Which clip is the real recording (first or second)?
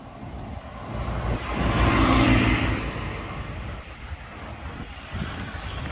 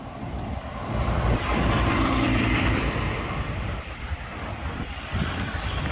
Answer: first